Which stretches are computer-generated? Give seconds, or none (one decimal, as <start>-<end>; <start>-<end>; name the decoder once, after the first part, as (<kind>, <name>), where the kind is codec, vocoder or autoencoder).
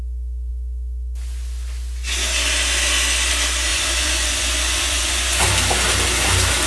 3.7-5.5 (vocoder, Vocos)